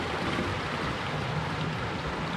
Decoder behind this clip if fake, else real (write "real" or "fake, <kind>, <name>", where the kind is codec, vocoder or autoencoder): real